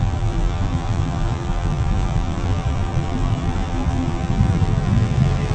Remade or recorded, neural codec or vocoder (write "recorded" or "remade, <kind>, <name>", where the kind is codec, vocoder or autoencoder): remade, vocoder, BigVGAN v2